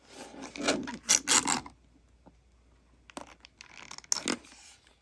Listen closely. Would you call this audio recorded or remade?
recorded